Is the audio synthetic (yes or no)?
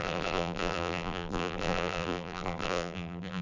yes